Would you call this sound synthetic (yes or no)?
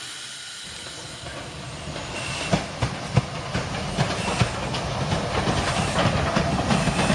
no